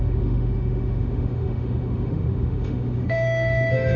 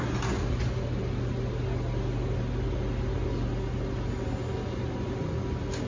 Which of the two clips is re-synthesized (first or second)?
first